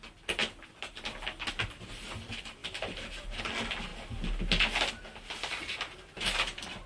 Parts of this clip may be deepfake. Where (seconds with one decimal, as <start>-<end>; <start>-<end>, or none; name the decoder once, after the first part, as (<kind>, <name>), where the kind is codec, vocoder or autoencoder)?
none